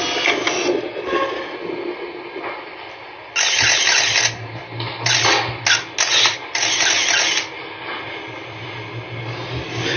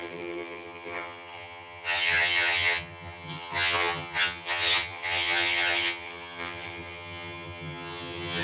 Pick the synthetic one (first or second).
second